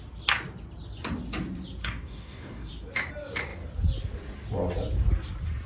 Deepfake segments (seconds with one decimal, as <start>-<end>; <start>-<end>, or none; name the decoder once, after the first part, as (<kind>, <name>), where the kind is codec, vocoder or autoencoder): 1.8-2.7 (codec, DAC)